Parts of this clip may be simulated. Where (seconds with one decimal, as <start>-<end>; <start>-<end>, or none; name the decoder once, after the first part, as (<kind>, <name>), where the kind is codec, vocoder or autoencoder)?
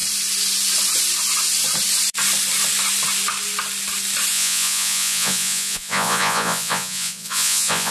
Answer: 4.3-7.9 (vocoder, Vocos)